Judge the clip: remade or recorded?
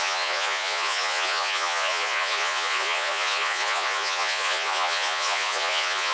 remade